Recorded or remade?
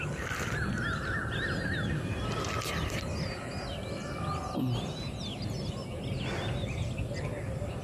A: recorded